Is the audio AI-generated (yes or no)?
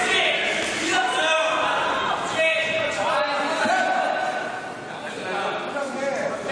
no